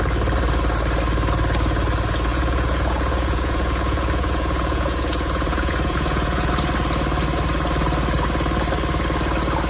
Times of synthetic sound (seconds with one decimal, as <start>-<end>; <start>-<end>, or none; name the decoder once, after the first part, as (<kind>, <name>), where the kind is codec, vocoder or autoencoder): 2.3-6.5 (vocoder, Vocos)